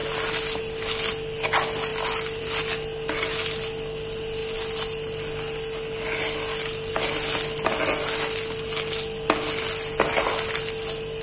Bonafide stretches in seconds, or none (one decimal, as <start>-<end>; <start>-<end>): 0.0-11.2